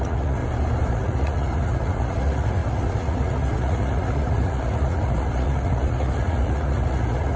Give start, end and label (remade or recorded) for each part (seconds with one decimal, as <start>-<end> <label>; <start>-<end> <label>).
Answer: 0.0-0.4 remade; 0.4-0.9 recorded; 0.9-7.4 remade